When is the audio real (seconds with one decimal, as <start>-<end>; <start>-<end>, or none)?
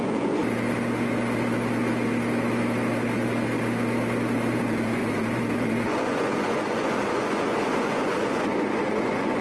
0.4-4.6